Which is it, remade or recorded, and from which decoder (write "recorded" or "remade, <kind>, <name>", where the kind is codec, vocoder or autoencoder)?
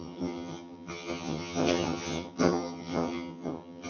remade, vocoder, HiFi-GAN